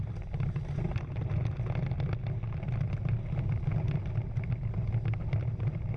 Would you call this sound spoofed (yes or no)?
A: no